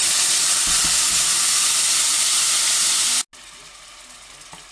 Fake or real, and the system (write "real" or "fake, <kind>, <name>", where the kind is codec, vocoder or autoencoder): real